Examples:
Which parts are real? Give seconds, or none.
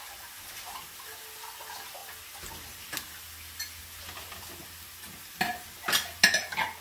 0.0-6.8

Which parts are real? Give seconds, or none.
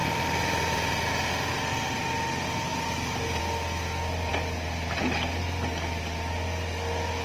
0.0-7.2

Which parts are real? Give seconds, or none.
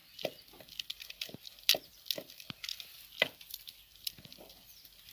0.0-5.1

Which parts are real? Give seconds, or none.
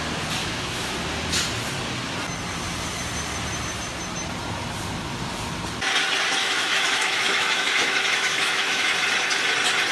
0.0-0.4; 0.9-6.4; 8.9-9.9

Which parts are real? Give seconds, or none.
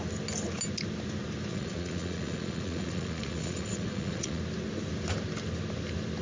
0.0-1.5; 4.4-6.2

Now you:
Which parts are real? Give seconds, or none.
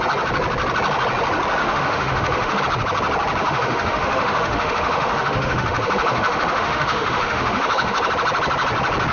0.0-1.6; 2.6-3.4; 8.1-9.1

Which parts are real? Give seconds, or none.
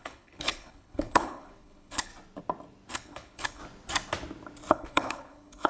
2.1-2.9; 3.6-4.7